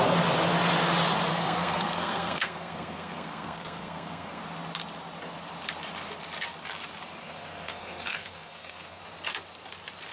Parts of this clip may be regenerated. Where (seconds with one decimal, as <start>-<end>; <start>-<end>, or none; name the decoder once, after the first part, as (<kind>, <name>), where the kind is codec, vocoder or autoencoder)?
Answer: 1.3-4.4 (codec, SNAC); 7.2-9.0